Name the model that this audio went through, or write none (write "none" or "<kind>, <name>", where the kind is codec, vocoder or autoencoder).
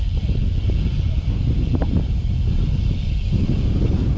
none